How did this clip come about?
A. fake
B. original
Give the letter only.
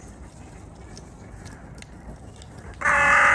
B